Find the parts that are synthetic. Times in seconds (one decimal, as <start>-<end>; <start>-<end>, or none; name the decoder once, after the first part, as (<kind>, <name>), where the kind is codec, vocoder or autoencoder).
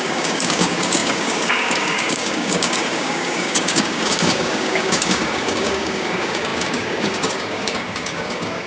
0.0-8.7 (codec, DAC)